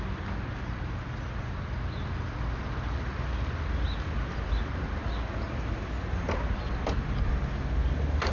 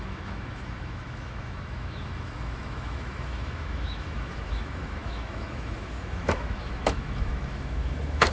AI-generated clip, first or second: second